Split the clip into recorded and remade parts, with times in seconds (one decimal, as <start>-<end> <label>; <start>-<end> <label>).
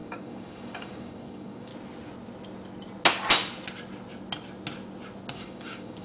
0.0-1.7 remade; 1.7-5.3 recorded; 5.3-6.0 remade